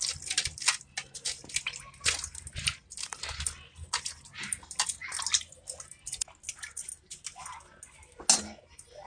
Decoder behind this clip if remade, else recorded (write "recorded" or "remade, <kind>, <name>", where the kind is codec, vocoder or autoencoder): recorded